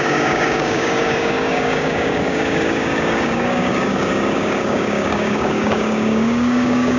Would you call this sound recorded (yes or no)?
no